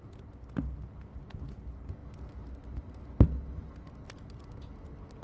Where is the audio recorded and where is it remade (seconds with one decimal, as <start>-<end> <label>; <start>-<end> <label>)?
0.0-5.2 recorded